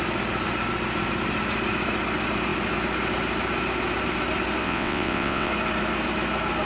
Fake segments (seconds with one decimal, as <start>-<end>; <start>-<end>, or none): 4.6-5.5